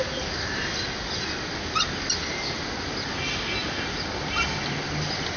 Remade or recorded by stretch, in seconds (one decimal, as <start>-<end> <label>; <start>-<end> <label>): 0.0-5.4 recorded